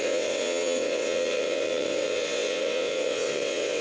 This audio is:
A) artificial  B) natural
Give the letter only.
A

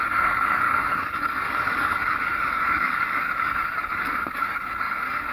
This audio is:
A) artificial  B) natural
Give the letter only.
A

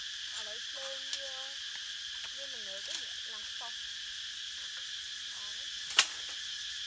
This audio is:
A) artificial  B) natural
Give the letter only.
B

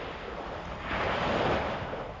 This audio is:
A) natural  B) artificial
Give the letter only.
A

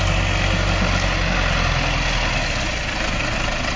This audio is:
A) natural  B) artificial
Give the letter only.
A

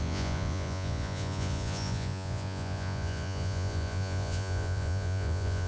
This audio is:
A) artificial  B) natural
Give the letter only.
A